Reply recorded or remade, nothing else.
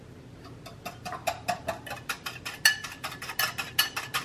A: recorded